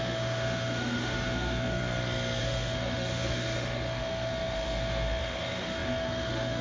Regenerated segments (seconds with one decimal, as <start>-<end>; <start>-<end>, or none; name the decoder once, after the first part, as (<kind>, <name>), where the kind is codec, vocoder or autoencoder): 0.0-1.8 (autoencoder, DAC-VAE); 2.4-6.6